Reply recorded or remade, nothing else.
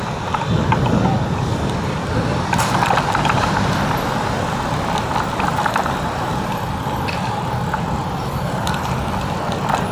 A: remade